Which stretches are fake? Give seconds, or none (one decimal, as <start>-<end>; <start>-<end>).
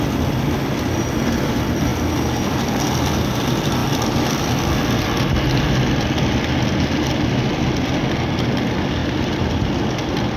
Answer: 9.0-10.4